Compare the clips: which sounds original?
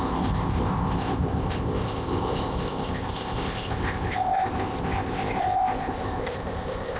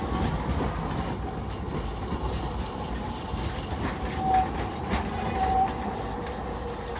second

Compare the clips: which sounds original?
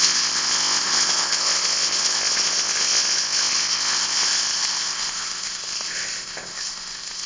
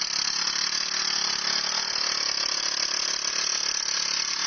second